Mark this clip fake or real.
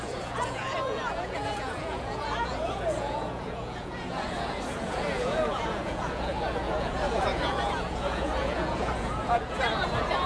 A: fake